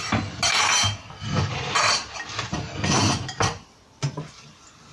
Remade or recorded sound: recorded